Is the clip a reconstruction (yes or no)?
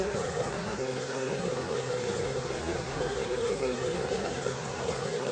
yes